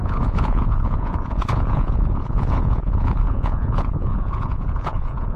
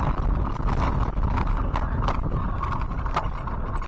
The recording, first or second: second